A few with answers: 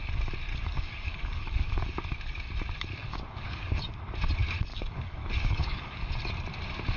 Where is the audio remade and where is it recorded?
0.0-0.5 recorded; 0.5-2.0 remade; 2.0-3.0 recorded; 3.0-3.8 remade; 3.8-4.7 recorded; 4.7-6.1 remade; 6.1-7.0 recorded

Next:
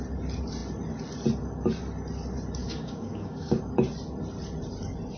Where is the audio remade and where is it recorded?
0.0-2.6 recorded; 2.6-3.6 remade; 3.6-5.2 recorded

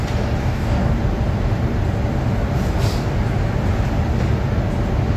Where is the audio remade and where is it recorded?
0.0-0.4 recorded; 0.4-0.9 remade; 0.9-5.2 recorded

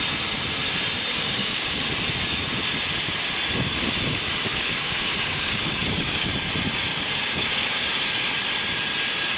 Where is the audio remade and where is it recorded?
0.0-1.1 recorded; 1.1-1.8 remade; 1.8-4.5 recorded; 4.5-6.3 remade; 6.3-6.9 recorded; 6.9-7.9 remade; 7.9-9.4 recorded

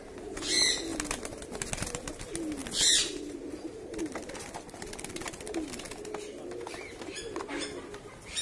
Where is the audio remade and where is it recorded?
0.0-8.4 recorded